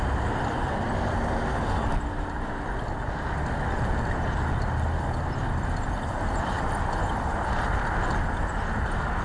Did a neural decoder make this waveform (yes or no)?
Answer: no